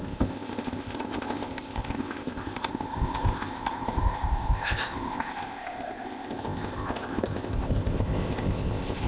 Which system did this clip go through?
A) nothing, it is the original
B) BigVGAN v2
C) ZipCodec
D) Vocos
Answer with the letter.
C